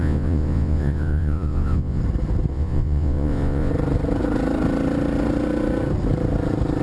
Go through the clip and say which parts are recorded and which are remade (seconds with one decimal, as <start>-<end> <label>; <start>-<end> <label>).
0.0-2.0 remade; 2.0-2.5 recorded; 2.5-3.7 remade; 3.7-6.8 recorded